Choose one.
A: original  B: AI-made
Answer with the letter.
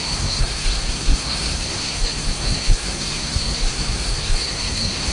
B